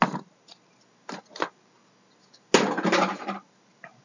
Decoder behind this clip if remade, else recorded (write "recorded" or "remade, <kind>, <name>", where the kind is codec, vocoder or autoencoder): recorded